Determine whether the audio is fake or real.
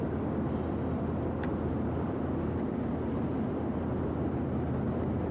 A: real